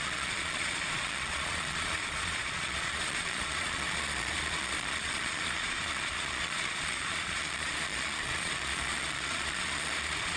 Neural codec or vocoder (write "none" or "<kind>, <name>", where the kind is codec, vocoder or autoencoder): vocoder, Vocos